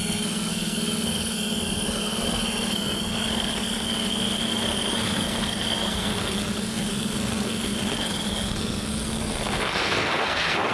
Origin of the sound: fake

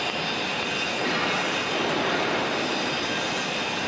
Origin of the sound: real